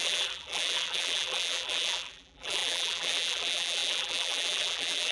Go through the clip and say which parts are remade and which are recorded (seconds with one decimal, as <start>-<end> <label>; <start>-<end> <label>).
0.0-5.1 remade